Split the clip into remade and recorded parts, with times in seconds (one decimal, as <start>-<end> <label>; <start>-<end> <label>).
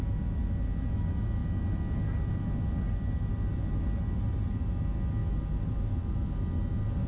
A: 0.0-7.1 recorded